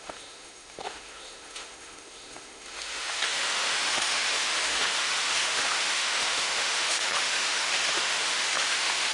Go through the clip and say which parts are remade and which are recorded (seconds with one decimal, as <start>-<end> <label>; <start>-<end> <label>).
0.0-9.1 remade

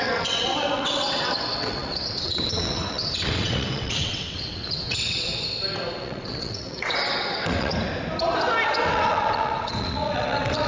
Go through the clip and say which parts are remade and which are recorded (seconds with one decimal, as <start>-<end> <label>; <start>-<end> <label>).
0.0-5.3 remade; 5.3-6.0 recorded; 6.0-7.7 remade; 7.7-8.7 recorded; 8.7-10.7 remade